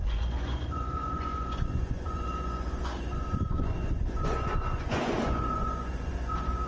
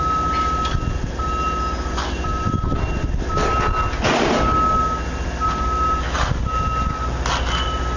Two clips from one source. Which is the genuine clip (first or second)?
second